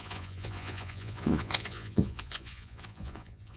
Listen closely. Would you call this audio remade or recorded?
remade